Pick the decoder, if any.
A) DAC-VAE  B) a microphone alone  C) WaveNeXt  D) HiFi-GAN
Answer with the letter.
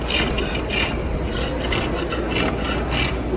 B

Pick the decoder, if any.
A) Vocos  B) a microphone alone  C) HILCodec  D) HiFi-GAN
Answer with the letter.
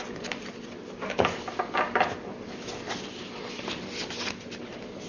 B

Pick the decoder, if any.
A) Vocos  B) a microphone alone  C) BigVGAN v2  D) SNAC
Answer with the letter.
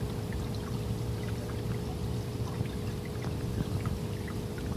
B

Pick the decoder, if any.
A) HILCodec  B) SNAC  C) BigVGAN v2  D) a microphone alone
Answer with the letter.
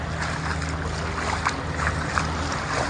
D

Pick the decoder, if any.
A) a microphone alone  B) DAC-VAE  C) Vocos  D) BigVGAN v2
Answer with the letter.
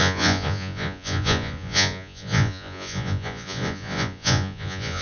C